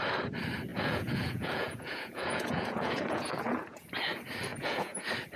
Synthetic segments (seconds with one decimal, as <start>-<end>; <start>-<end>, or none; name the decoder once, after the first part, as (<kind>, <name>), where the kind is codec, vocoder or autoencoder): 0.7-3.9 (vocoder, Vocos); 4.5-5.0